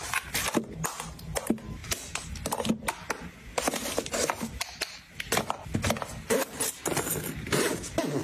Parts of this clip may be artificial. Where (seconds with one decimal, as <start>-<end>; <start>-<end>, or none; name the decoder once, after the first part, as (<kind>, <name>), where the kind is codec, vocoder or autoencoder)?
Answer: none